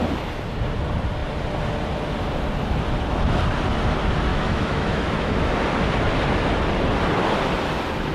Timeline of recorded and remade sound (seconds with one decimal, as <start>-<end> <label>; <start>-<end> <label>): 0.0-4.3 recorded; 4.3-5.5 remade; 5.5-8.1 recorded